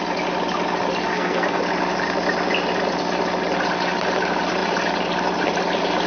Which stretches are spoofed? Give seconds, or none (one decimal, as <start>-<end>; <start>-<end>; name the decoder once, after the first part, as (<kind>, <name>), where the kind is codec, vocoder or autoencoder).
1.1-1.6 (codec, SNAC)